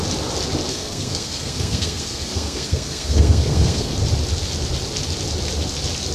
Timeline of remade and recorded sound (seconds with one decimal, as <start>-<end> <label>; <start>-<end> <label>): 0.0-0.7 recorded; 0.7-3.9 remade; 3.9-6.1 recorded